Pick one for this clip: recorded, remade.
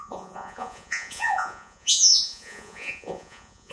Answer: remade